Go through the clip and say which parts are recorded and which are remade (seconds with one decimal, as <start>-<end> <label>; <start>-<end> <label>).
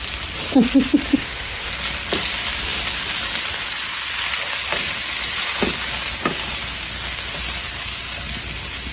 0.0-1.1 recorded; 1.1-1.7 remade; 1.7-8.9 recorded